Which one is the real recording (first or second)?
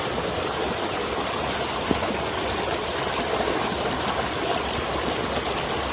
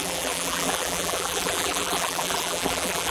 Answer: first